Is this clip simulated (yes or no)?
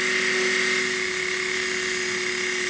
no